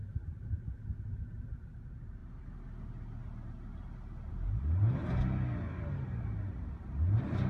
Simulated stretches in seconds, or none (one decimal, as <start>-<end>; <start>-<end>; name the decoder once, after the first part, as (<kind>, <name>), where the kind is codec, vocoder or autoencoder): none